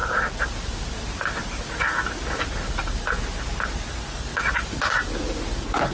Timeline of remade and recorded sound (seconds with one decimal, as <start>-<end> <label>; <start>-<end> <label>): 0.0-2.7 remade; 2.7-5.9 recorded